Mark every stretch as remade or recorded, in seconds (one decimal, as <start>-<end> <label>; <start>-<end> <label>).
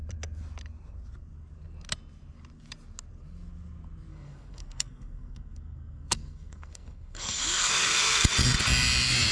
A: 0.0-4.1 recorded; 4.1-8.3 remade; 8.3-9.3 recorded